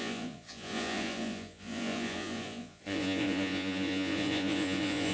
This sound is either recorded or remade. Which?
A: remade